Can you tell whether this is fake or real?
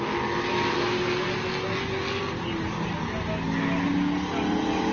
real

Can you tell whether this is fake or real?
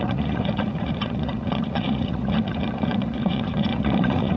fake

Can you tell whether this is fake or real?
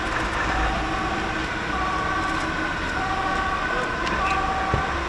real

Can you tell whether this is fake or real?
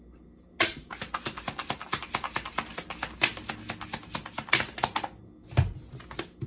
real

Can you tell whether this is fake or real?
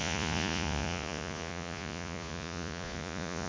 fake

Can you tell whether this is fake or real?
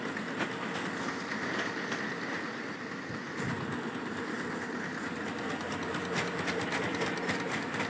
real